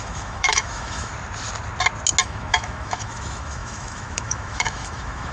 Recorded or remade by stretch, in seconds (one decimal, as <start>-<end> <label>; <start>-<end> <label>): 0.0-1.1 remade; 1.1-2.2 recorded; 2.2-5.3 remade

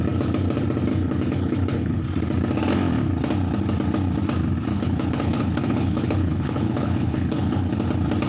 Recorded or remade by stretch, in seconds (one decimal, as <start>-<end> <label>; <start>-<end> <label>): 0.0-0.9 recorded; 0.9-2.0 remade; 2.0-4.7 recorded; 4.7-7.7 remade; 7.7-8.3 recorded

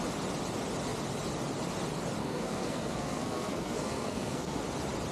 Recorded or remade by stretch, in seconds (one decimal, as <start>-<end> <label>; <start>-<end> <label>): 0.0-2.2 recorded; 2.2-4.6 remade; 4.6-5.1 recorded

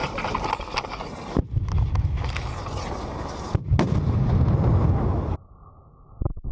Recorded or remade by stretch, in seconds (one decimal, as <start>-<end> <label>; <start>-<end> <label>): 0.0-6.5 recorded

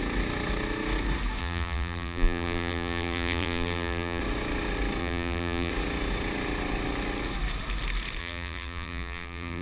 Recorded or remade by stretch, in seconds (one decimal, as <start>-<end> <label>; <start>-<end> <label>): 0.0-1.4 recorded; 1.4-4.2 remade; 4.2-5.0 recorded; 5.0-5.7 remade; 5.7-8.2 recorded; 8.2-9.6 remade